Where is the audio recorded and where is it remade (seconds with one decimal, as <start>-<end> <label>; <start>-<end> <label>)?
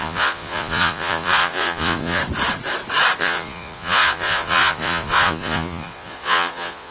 0.0-2.2 remade; 2.2-3.2 recorded; 3.2-6.9 remade